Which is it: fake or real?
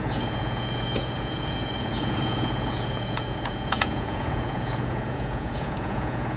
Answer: fake